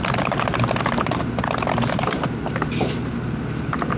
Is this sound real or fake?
real